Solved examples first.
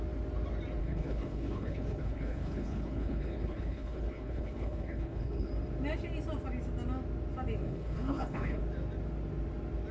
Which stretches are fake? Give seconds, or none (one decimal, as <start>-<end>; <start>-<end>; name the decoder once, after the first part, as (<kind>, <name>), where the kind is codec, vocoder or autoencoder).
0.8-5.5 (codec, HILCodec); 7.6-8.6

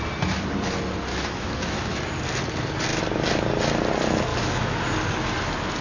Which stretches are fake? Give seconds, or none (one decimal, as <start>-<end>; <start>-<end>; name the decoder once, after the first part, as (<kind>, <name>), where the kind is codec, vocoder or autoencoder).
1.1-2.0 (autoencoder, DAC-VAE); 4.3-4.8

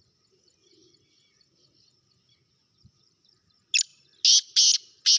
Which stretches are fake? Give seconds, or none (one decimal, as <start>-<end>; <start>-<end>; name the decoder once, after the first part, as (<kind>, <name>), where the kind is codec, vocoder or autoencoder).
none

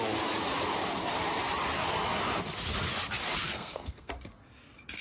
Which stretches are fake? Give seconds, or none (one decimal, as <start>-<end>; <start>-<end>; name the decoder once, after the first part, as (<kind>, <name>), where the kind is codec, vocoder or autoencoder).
3.4-4.1 (codec, SNAC)

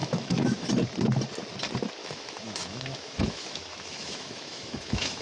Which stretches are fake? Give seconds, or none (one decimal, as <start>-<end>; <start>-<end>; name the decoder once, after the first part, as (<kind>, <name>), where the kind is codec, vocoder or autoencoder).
0.0-0.7 (autoencoder, DAC-VAE); 2.0-5.2

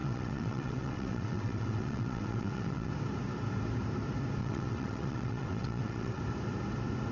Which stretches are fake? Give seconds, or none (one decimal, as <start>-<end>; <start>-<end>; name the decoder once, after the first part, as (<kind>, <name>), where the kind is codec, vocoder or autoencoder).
0.0-2.9 (vocoder, WaveNeXt); 4.4-6.2

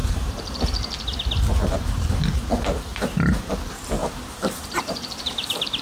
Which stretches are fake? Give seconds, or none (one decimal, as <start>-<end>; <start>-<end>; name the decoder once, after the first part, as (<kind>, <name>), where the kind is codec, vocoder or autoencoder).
0.0-0.6 (vocoder, BigVGAN v2); 1.6-2.2; 2.9-3.5; 4.0-5.8

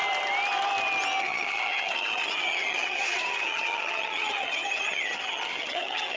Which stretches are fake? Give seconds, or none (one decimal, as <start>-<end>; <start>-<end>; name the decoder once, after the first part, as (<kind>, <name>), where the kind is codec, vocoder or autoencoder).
1.2-6.2 (vocoder, HiFi-GAN)